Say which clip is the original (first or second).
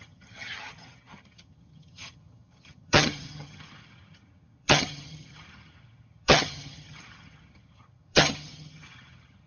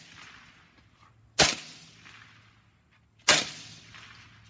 second